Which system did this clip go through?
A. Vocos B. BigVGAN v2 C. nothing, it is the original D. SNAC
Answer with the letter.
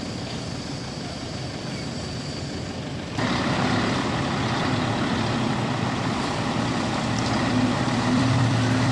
B